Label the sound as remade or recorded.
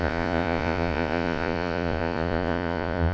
remade